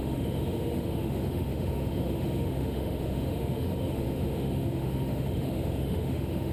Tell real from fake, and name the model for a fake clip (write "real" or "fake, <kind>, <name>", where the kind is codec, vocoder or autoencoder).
fake, autoencoder, DAC-VAE